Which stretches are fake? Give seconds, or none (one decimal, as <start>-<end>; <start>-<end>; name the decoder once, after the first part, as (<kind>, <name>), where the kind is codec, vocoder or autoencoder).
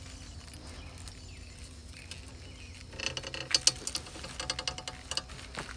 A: none